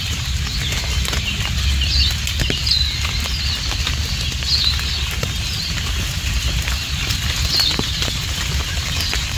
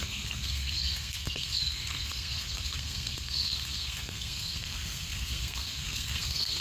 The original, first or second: first